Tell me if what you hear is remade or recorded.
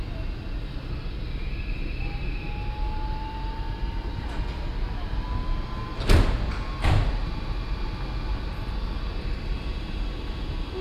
recorded